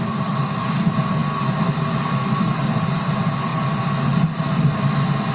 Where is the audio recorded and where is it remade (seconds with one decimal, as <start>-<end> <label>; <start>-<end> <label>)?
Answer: 0.0-5.3 recorded